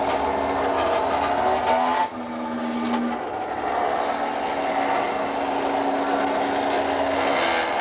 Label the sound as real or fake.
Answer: real